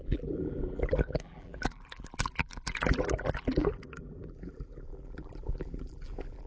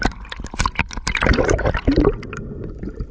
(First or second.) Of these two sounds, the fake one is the first